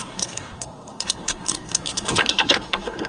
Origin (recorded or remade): remade